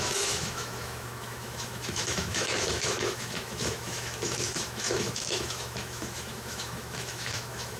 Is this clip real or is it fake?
fake